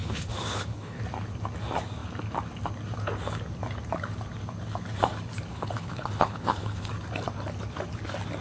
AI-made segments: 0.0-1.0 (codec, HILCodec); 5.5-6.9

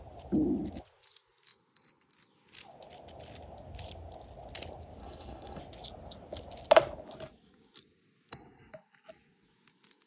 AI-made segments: 5.0-5.6 (codec, HILCodec)

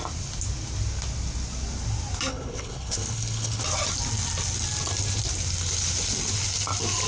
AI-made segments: 2.3-3.6 (codec, HILCodec)

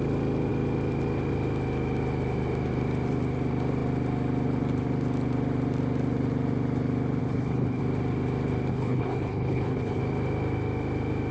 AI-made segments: 7.2-7.8 (codec, HILCodec); 8.7-10.0

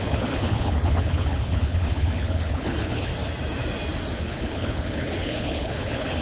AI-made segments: 0.0-3.1 (codec, HILCodec); 4.2-6.2

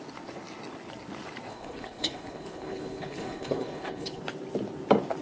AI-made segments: 1.5-4.2 (codec, HILCodec)

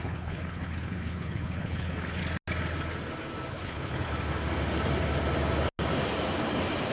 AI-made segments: 0.0-2.2 (codec, HILCodec); 3.5-4.1

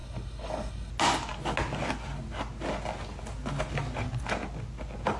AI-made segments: 0.0-0.9 (codec, HILCodec)